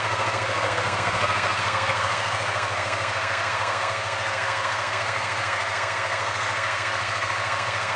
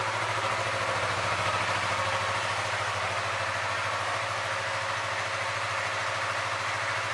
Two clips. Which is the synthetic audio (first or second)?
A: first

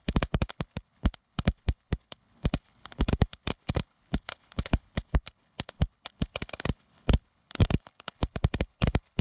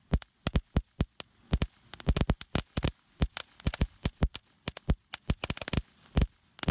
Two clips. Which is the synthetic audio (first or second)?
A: first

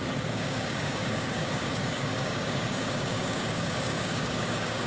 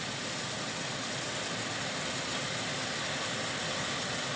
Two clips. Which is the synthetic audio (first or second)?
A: first